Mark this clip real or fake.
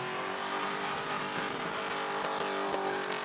real